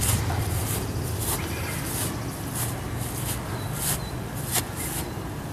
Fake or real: real